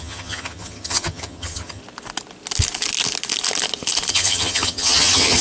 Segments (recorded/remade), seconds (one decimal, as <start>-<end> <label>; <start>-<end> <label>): 0.0-1.8 remade; 1.8-4.1 recorded; 4.1-5.4 remade